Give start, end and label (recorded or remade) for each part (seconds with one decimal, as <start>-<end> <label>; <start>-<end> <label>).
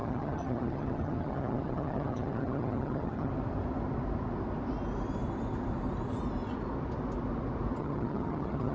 0.0-3.3 remade; 3.3-7.8 recorded; 7.8-8.7 remade